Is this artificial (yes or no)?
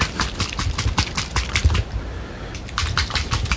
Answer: no